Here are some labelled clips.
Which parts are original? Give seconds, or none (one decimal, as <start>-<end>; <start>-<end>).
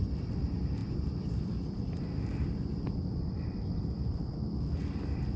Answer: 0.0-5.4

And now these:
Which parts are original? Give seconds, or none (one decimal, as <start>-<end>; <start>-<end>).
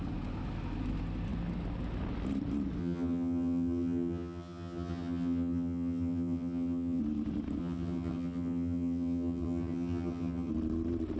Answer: 0.0-2.8; 7.0-7.6; 10.5-11.2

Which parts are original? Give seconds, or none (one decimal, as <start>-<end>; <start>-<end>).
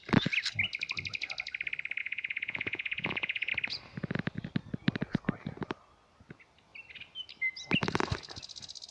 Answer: 0.0-2.0; 3.5-8.9